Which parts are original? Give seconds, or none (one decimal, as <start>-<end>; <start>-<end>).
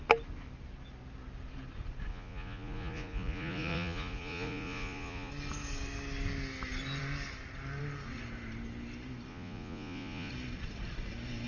0.0-2.1; 5.3-9.3; 10.3-11.5